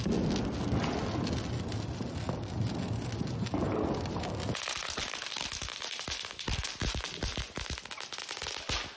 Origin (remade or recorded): recorded